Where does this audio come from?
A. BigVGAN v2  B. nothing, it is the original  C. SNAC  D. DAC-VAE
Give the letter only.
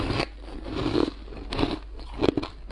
B